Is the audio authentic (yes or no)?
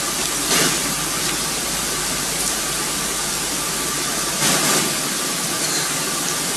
yes